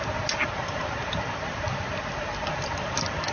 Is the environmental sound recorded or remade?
recorded